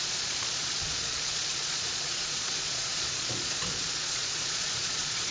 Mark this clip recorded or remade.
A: remade